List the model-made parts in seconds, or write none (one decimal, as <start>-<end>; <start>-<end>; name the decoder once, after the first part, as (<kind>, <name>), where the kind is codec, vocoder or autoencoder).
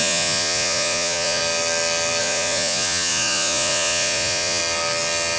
0.0-1.4 (vocoder, Vocos); 2.2-4.6